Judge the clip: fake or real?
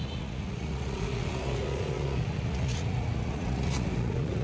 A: fake